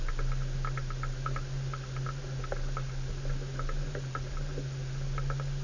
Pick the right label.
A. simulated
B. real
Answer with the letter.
B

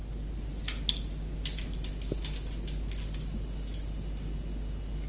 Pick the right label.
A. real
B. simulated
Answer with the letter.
A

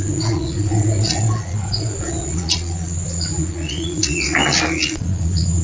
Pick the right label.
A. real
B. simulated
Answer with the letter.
B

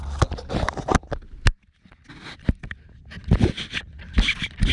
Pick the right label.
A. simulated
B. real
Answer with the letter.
B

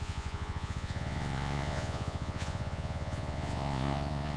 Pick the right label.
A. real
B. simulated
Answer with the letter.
B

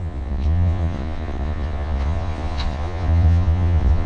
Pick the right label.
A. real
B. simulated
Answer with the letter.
B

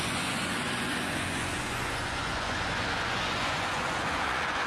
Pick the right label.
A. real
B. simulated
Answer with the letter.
B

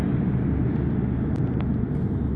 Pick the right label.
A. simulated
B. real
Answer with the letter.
B